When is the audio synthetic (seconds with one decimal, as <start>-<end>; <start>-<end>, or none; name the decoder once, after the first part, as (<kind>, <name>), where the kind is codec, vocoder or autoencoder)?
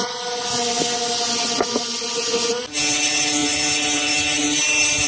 none